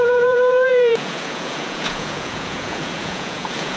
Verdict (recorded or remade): remade